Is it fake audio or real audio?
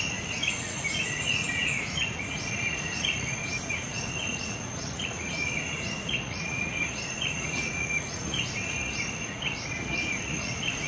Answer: fake